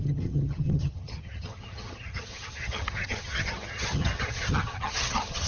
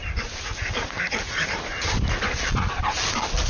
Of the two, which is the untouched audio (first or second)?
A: second